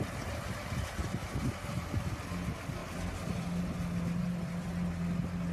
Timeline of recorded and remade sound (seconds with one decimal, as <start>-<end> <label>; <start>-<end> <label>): 0.0-5.5 recorded